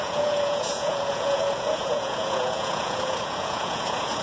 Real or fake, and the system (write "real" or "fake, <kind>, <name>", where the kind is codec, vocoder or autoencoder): fake, vocoder, Vocos